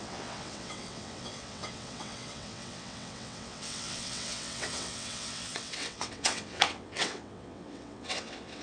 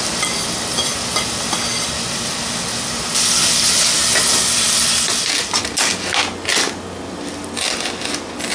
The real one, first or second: second